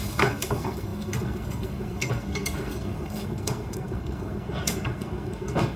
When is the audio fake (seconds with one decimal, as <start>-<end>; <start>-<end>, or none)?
0.0-5.8